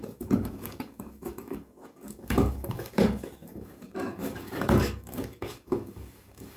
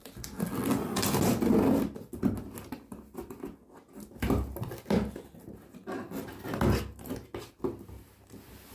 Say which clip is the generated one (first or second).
first